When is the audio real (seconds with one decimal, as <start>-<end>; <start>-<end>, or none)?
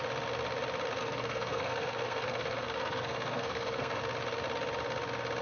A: 0.0-1.0; 4.0-5.4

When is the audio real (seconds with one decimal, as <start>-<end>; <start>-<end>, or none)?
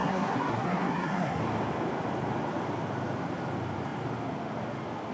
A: 1.4-5.1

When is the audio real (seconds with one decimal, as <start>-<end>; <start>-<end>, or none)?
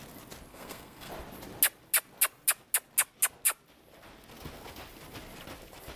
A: 0.0-0.5; 1.1-6.0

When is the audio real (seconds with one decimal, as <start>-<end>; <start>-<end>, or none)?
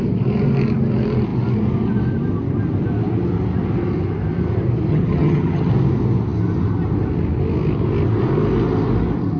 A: 0.0-4.9; 5.7-9.4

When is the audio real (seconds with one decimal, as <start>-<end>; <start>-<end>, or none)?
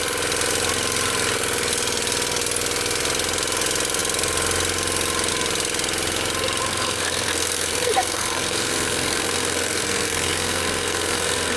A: 0.0-6.7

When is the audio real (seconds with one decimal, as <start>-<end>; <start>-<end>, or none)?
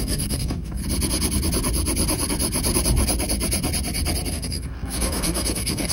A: 0.8-4.3